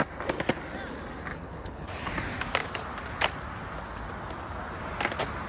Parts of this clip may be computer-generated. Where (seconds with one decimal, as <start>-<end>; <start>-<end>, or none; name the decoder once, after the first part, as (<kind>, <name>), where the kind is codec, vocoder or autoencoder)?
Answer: 1.3-2.1 (codec, HILCodec)